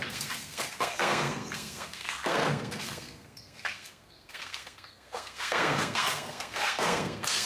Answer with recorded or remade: remade